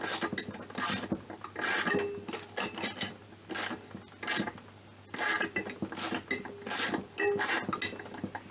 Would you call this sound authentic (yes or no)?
yes